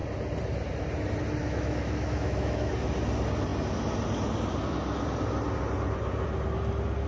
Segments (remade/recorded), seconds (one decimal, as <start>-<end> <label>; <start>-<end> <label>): 0.0-1.4 recorded; 1.4-2.7 remade; 2.7-7.1 recorded